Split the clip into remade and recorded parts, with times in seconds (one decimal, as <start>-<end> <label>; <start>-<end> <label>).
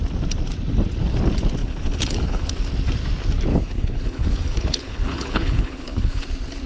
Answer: 0.0-1.6 recorded; 1.6-2.5 remade; 2.5-3.5 recorded; 3.5-6.2 remade; 6.2-6.7 recorded